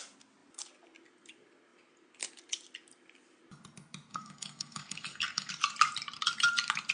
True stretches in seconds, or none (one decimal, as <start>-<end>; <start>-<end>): 0.0-4.1; 5.5-6.9